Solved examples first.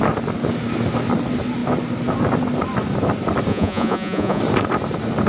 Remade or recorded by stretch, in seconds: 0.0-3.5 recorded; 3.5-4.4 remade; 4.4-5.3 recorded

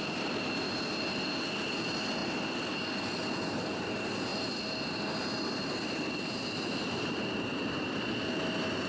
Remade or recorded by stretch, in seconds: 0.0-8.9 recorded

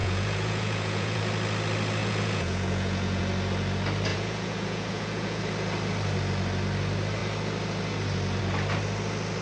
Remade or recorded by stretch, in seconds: 0.0-1.2 remade; 1.2-2.0 recorded; 2.0-3.2 remade; 3.2-4.1 recorded; 4.1-5.4 remade; 5.4-9.4 recorded

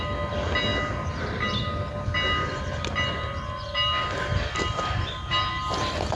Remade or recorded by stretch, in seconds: 0.0-6.2 recorded